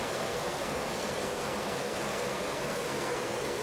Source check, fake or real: fake